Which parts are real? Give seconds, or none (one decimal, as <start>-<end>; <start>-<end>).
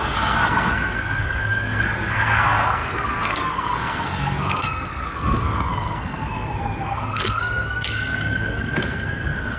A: none